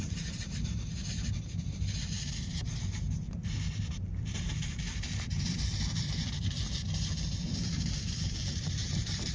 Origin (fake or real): fake